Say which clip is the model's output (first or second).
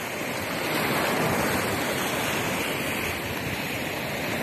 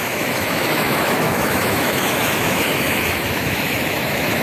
second